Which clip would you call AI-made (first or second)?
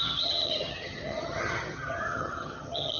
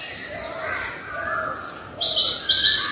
first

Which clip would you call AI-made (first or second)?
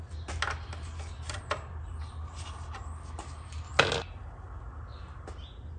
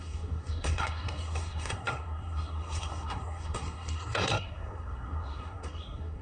second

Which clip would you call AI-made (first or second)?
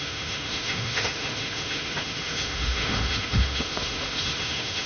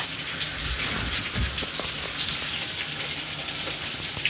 first